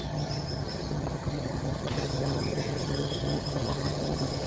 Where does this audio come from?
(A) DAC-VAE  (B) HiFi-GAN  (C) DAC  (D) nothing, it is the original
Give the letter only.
B